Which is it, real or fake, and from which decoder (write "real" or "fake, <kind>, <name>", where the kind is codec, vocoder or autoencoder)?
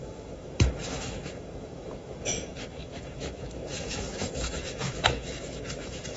fake, autoencoder, DAC-VAE